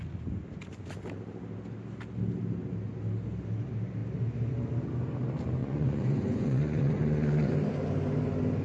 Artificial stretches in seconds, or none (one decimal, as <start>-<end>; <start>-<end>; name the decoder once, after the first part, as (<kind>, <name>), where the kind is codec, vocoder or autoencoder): 5.6-7.5 (vocoder, Vocos)